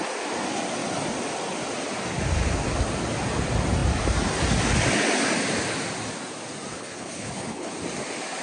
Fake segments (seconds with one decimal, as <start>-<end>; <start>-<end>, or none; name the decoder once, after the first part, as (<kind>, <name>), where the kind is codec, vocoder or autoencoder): 6.7-7.7 (codec, HILCodec)